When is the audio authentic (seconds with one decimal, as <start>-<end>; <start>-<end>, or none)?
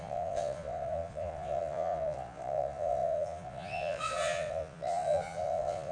none